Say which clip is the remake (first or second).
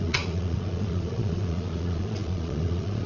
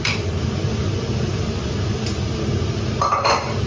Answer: first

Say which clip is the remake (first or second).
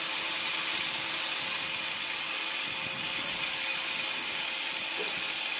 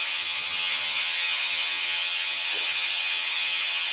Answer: second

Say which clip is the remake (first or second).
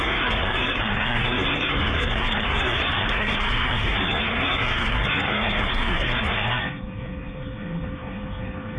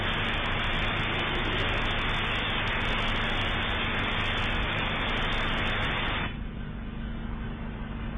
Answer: first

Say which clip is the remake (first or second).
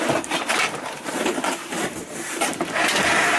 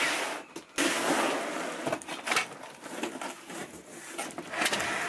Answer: first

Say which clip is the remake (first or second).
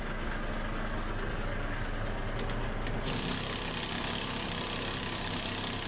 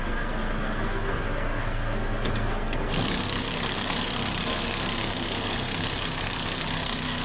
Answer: second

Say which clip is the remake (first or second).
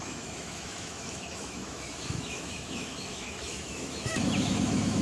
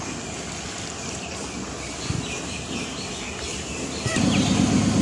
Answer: first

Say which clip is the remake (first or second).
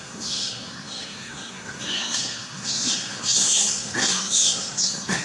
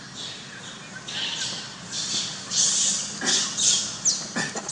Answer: first